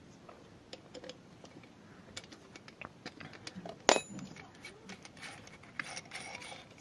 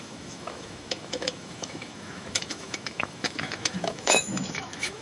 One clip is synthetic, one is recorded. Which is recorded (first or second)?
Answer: first